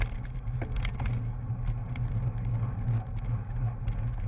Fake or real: real